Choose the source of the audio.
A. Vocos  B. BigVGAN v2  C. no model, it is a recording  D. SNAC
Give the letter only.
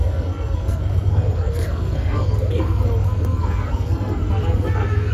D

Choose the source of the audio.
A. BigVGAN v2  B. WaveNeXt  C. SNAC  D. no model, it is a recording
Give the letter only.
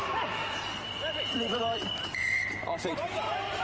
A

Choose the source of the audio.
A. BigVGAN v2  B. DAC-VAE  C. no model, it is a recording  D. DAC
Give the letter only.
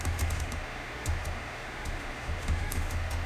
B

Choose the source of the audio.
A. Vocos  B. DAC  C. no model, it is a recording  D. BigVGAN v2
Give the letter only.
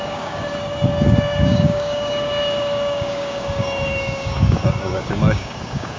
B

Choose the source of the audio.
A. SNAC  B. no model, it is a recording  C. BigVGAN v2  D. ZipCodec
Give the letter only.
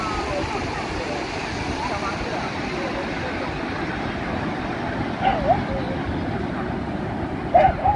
B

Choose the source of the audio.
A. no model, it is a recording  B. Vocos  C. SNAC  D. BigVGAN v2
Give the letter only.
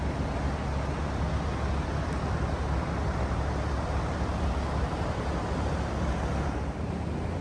A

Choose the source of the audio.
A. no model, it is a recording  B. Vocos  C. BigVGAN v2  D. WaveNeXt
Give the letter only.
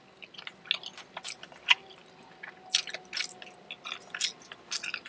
A